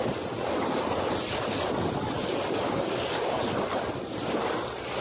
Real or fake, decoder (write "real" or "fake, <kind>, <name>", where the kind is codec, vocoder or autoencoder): real